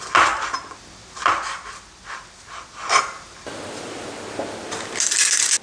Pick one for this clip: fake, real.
real